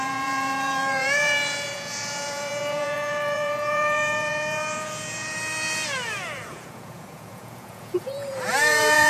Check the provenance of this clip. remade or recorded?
remade